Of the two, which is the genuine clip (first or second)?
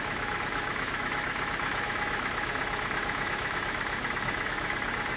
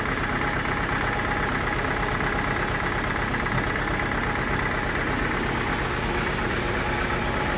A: second